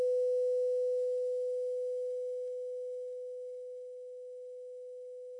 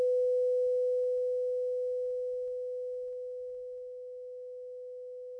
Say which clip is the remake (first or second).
first